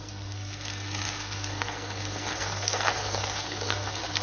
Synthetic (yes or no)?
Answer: yes